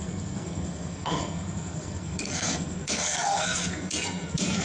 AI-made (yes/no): yes